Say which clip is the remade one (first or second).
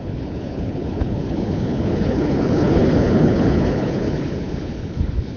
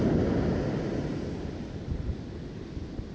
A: first